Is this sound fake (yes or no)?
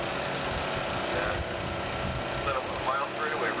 no